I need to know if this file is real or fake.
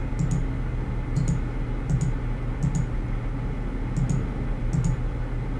real